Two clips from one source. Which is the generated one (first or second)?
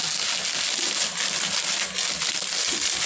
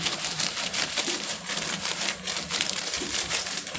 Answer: second